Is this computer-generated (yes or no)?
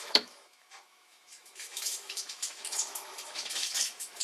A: yes